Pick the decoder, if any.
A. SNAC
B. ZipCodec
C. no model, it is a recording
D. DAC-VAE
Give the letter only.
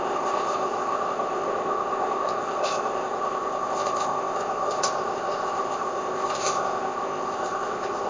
B